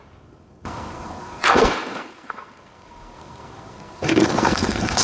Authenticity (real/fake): fake